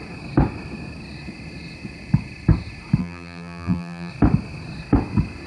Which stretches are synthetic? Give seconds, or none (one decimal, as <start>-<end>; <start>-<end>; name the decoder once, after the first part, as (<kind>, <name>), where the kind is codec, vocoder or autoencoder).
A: 3.0-4.1 (vocoder, BigVGAN v2)